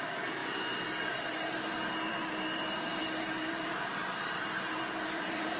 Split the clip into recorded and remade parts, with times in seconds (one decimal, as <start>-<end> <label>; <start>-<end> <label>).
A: 0.0-0.4 remade; 0.4-2.1 recorded; 2.1-4.0 remade; 4.0-4.6 recorded; 4.6-5.6 remade